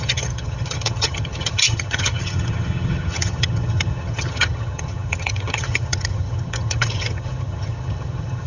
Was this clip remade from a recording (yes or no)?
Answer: yes